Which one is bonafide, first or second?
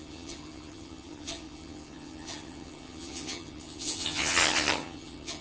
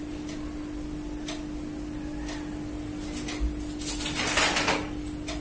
second